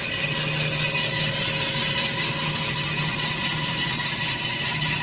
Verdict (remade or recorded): recorded